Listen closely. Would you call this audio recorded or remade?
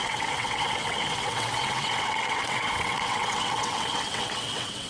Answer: remade